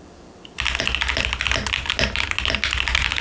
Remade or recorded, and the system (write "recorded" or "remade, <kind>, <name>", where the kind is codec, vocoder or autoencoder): recorded